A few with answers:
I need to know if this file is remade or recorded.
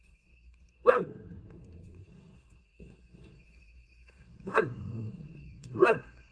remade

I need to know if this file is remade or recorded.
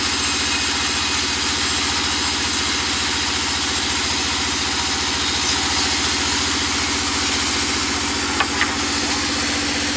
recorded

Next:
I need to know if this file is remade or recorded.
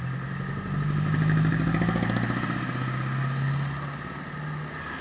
recorded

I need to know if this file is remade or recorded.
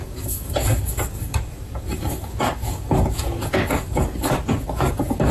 remade